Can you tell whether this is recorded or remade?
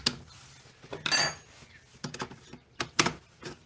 recorded